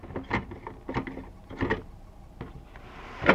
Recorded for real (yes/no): yes